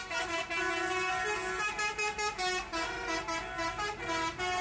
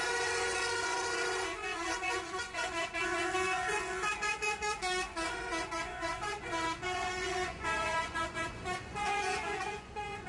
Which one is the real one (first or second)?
first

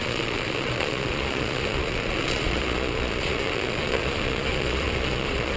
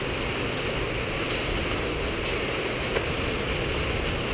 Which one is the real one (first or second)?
second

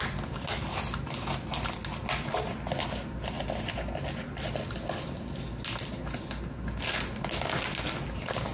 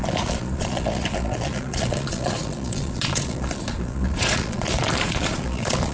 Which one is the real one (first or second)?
first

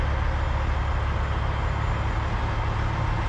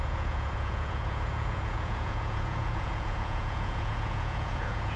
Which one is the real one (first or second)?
first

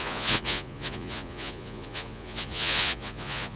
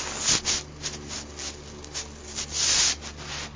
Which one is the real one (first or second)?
second